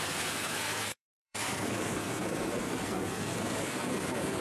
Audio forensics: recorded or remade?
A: remade